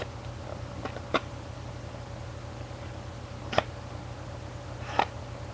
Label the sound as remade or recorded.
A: recorded